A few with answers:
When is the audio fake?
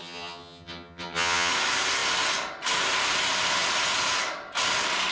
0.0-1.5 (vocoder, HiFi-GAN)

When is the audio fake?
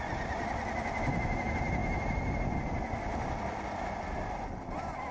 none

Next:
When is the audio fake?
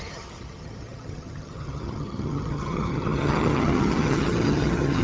0.0-5.0 (vocoder, HiFi-GAN)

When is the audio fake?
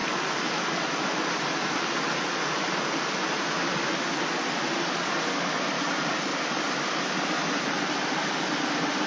none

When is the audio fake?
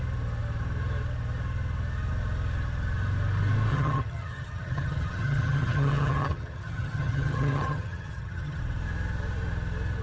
3.7-8.6 (vocoder, HiFi-GAN)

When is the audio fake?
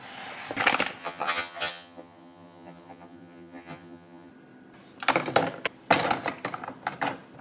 1.0-4.3 (vocoder, HiFi-GAN)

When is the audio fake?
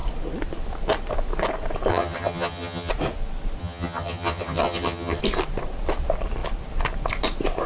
1.9-2.9 (vocoder, HiFi-GAN); 3.6-5.2